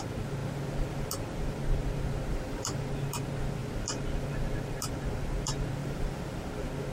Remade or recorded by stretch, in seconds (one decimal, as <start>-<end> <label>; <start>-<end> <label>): 0.0-2.3 recorded; 2.3-2.8 remade; 2.8-5.8 recorded; 5.8-6.5 remade; 6.5-6.9 recorded